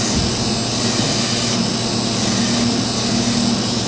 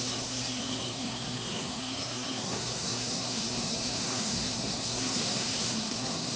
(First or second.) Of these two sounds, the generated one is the second